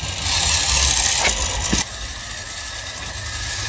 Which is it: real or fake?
real